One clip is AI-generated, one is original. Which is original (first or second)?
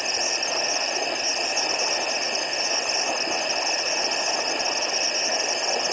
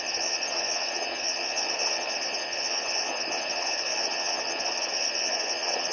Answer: first